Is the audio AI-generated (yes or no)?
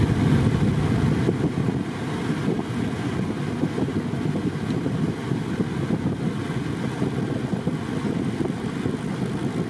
no